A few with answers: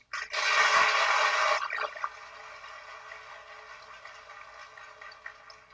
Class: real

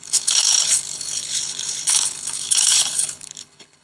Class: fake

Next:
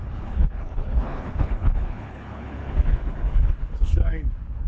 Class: fake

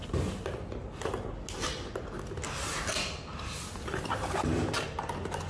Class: real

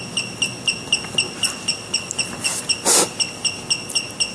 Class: real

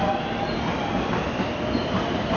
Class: real